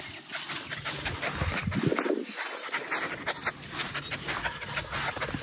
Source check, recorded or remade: recorded